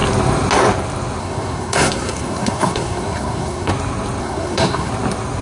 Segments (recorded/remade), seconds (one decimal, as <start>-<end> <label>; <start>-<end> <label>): 0.0-1.2 recorded; 1.2-3.7 remade; 3.7-4.2 recorded; 4.2-4.9 remade; 4.9-5.4 recorded